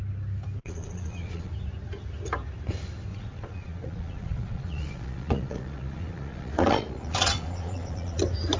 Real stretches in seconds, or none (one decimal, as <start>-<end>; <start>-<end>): 0.0-0.6; 1.5-3.1; 8.2-8.6